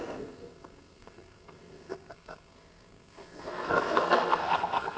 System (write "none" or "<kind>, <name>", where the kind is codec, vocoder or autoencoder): codec, SNAC